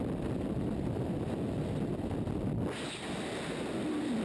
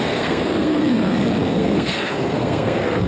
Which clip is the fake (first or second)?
second